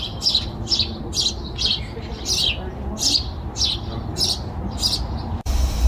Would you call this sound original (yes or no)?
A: yes